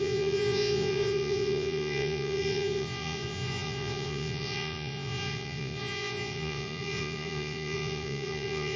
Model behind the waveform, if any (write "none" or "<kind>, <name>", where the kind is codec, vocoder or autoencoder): vocoder, Vocos